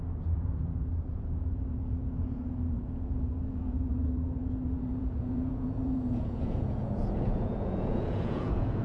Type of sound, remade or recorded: remade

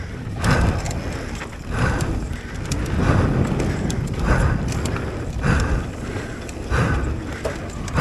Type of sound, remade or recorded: recorded